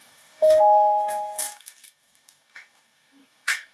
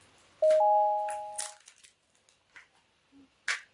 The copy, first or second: first